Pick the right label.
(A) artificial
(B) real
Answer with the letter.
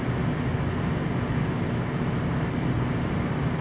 B